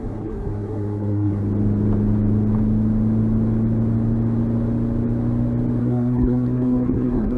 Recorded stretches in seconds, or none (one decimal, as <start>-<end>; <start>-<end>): 1.4-5.8